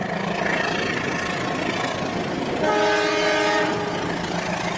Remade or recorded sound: recorded